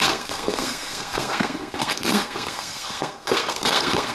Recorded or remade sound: remade